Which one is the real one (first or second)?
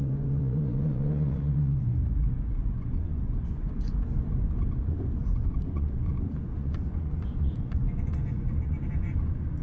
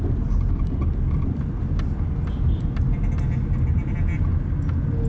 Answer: second